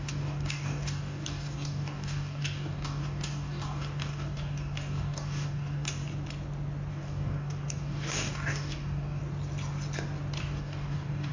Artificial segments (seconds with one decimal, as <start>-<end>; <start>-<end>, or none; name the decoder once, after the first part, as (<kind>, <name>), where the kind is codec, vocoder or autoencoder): 0.0-6.0 (codec, DAC); 6.9-9.2; 10.4-11.3